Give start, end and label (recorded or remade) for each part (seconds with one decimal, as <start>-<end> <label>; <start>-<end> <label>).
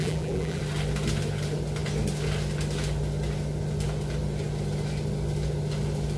0.0-0.6 remade; 0.6-6.2 recorded